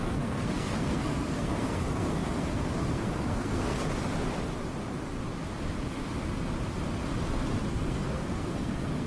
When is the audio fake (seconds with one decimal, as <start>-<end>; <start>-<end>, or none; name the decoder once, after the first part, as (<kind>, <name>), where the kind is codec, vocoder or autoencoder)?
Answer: 0.0-3.9 (codec, SNAC); 7.7-9.1